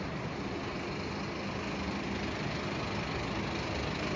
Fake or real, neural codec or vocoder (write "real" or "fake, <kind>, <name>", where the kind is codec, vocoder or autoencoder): real